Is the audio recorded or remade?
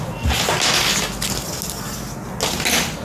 recorded